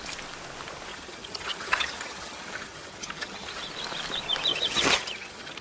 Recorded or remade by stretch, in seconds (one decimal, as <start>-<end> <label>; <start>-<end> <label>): 0.0-0.9 recorded; 0.9-3.7 remade; 3.7-4.5 recorded; 4.5-5.6 remade